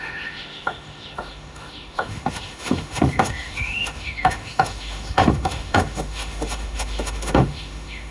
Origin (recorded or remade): remade